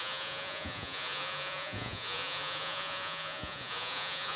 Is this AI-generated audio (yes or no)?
yes